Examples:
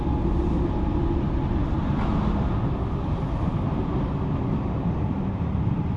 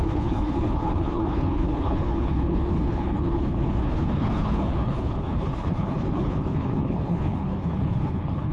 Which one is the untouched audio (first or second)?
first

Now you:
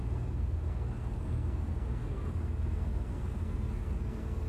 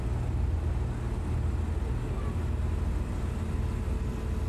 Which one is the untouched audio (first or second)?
second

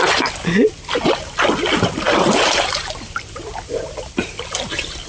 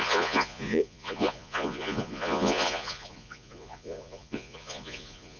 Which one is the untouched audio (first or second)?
first